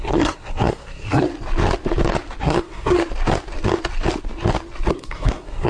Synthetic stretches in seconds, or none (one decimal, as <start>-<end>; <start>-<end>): 0.0-1.3; 2.4-3.0; 4.9-5.7